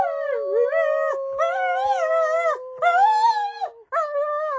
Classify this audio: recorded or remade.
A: recorded